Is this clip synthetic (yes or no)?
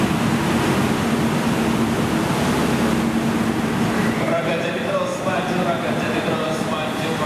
no